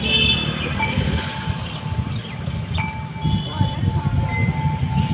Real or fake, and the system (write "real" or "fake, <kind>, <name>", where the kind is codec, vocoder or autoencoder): real